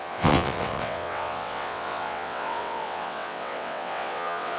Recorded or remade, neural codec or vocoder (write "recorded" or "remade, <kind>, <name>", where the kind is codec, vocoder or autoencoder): remade, vocoder, WaveNeXt